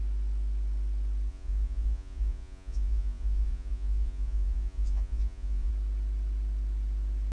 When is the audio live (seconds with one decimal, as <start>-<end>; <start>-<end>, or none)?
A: 0.0-1.3; 5.7-7.3